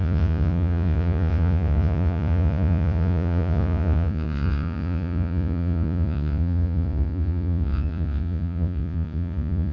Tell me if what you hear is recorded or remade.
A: remade